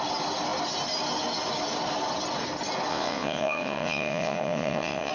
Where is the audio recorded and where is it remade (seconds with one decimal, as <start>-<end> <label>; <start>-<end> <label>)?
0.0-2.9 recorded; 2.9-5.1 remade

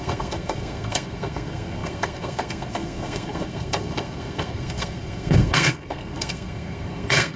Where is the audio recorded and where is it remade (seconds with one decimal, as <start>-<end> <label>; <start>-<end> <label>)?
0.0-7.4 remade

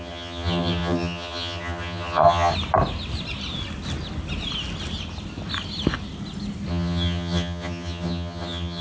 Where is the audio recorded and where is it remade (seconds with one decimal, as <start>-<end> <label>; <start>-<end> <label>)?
0.0-2.5 remade; 2.5-6.7 recorded; 6.7-8.8 remade